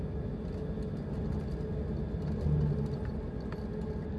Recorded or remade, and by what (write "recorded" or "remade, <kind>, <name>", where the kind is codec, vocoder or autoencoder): recorded